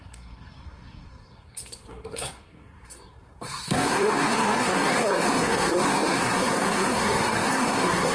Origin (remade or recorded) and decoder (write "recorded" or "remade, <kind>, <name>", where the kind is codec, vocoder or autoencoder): remade, codec, SNAC